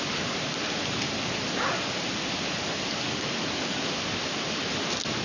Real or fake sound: real